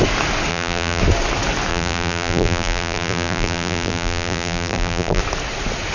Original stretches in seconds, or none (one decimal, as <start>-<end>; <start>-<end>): 0.0-0.5; 1.0-1.7; 5.2-5.9